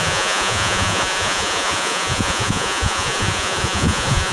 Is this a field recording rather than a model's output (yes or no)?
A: no